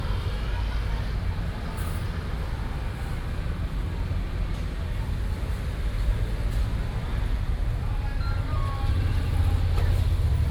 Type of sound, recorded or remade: recorded